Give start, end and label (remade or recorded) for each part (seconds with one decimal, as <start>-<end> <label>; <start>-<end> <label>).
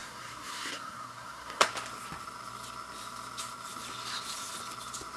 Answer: 0.0-1.7 remade; 1.7-5.2 recorded